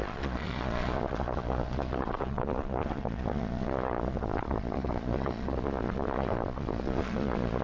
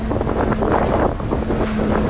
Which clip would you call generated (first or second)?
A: first